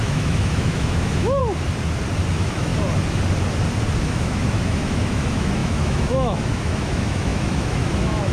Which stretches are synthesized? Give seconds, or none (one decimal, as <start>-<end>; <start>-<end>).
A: 0.0-1.4; 2.3-2.7; 4.0-8.3